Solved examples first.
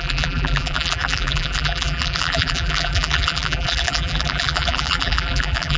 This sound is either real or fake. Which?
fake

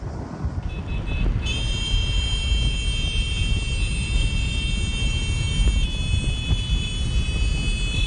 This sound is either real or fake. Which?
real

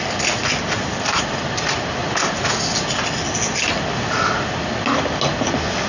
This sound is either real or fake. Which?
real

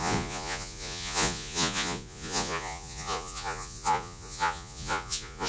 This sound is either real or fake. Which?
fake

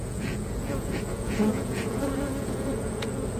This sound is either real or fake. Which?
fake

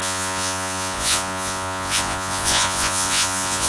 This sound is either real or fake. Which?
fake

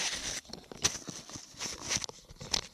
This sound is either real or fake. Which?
real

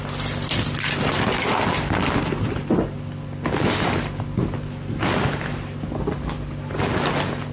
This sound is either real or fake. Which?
real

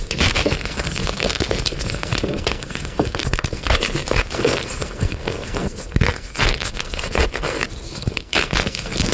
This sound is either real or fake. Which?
fake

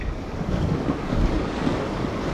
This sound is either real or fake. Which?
fake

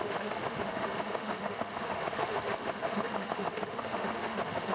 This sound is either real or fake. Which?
fake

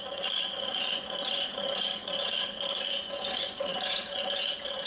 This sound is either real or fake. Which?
fake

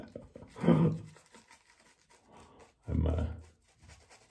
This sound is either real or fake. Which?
real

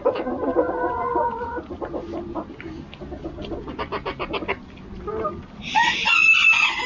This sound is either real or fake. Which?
real